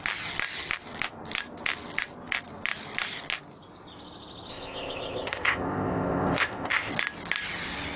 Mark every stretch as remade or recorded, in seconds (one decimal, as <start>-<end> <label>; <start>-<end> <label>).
0.0-4.5 recorded; 4.5-6.9 remade; 6.9-8.0 recorded

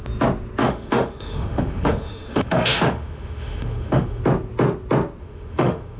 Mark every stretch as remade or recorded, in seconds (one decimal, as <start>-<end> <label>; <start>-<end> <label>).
0.0-0.6 recorded; 0.6-4.2 remade; 4.2-5.2 recorded; 5.2-6.0 remade

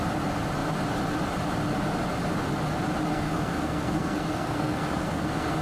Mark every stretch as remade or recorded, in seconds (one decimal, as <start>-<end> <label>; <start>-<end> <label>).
0.0-3.1 recorded; 3.1-5.6 remade